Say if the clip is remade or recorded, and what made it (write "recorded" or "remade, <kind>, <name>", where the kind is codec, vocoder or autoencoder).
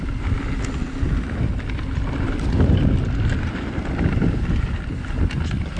recorded